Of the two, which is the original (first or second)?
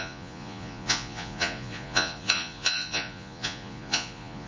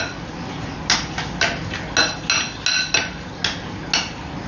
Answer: second